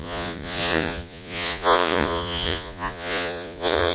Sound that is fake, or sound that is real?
fake